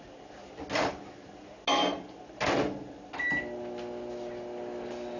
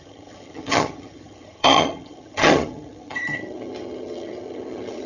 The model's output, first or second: second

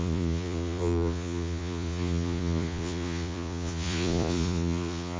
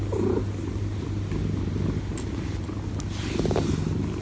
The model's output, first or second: first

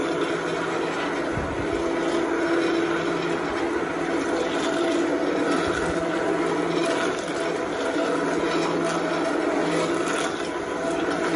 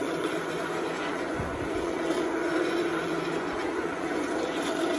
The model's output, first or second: second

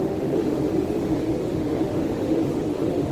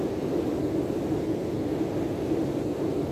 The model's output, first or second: first